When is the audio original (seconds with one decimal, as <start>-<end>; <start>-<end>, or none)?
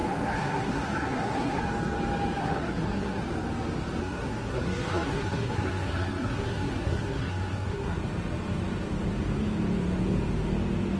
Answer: 1.6-2.4; 3.2-4.0; 8.0-11.0